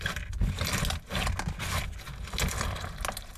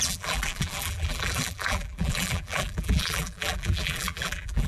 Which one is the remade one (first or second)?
second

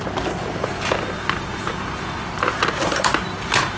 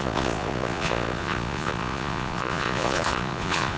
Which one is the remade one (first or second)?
second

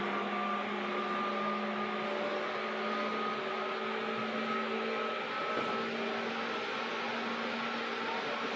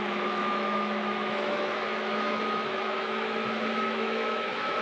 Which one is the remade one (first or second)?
second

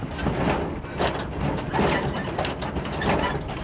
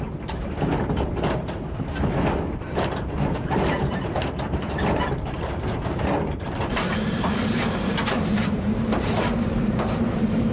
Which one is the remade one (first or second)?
second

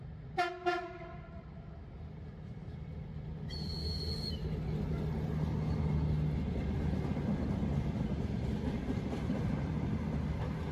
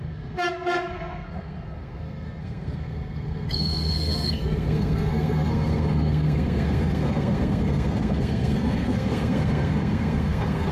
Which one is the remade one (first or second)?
second